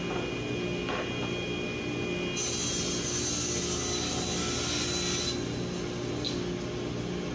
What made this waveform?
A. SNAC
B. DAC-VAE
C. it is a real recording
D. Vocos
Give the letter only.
C